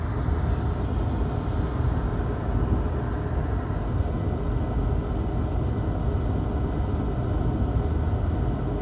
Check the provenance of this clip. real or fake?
real